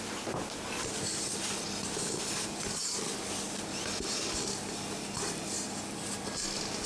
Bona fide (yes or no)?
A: yes